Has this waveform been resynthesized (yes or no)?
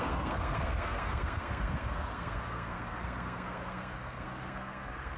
yes